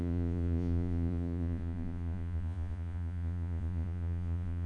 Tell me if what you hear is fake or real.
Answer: fake